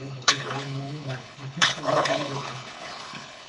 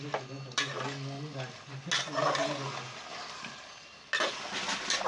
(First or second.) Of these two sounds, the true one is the second